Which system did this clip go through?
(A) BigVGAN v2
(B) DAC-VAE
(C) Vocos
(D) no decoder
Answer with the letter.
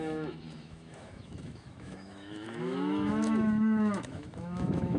B